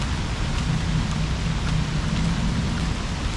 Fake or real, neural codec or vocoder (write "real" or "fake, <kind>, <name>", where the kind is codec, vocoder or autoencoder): real